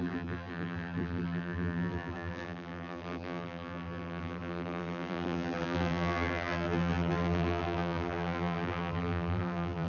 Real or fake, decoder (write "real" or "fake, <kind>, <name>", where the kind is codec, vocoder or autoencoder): fake, vocoder, BigVGAN v2